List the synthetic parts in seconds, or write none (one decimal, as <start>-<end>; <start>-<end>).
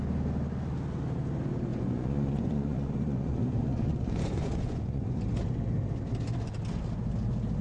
1.7-5.2